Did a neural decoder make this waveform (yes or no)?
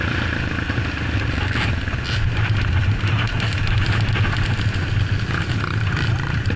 no